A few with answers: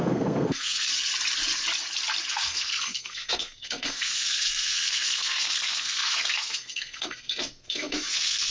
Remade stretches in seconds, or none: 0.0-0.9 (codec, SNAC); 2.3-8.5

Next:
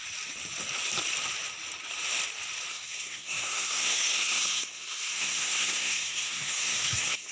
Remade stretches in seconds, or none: 2.7-7.3 (codec, SNAC)

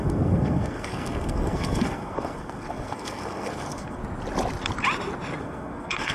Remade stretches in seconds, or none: 0.0-4.0 (codec, SNAC); 5.4-6.1

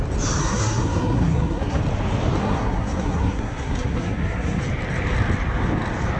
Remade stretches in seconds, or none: 0.4-1.8 (codec, SNAC); 2.4-4.6

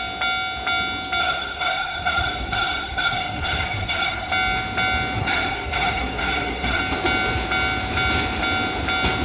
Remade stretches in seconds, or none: 1.2-4.3 (codec, SNAC); 5.2-6.8